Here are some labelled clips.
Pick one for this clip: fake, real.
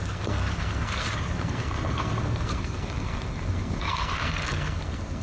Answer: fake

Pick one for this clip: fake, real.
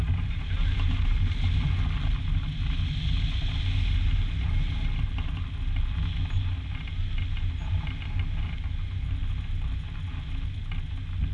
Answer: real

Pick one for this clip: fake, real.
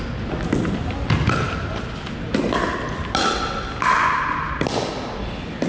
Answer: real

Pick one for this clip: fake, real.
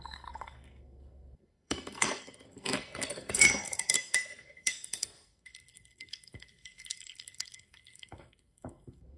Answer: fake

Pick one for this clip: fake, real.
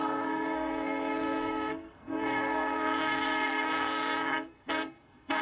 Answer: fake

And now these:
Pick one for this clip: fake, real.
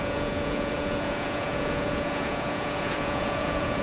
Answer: fake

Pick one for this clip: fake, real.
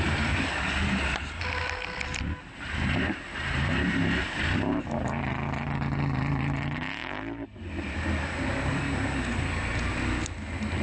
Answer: real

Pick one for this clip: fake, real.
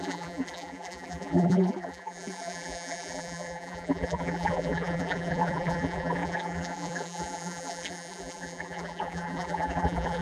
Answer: fake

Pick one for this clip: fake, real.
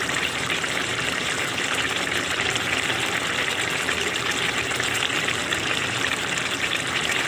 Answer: fake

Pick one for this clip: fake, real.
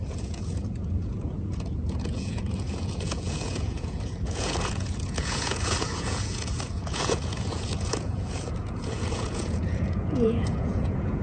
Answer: fake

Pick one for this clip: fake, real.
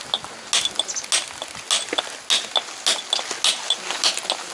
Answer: real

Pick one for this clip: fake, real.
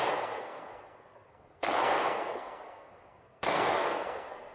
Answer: fake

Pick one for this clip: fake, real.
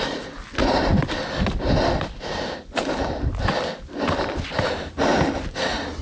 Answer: real